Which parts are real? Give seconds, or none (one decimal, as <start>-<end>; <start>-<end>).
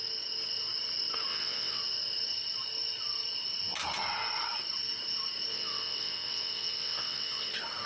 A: 0.0-1.3; 1.8-5.5; 7.5-7.9